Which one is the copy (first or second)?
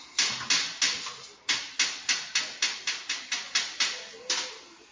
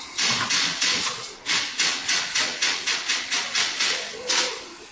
second